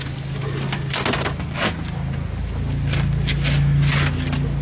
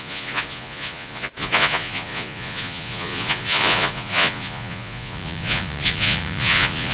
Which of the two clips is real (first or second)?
first